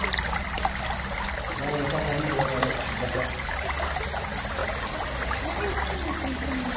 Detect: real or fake real